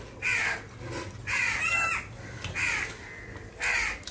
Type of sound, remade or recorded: recorded